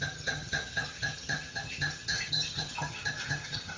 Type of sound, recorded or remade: remade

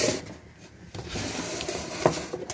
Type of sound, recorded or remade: recorded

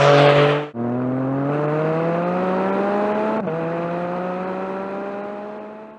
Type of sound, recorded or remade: recorded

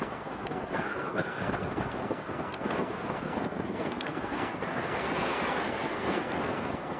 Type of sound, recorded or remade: remade